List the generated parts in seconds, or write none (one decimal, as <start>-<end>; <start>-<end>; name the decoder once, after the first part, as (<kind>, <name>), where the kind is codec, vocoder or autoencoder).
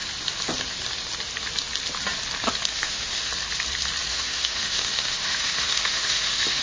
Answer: 2.7-3.3 (autoencoder, DAC-VAE); 4.1-6.6